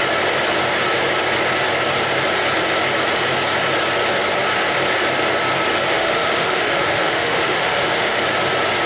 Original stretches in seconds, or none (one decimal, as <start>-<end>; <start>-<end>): 0.0-5.9; 8.2-8.9